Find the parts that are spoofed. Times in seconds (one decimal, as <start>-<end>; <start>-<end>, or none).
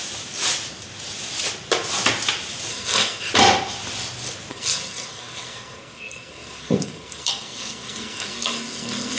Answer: 2.7-3.3; 4.5-9.2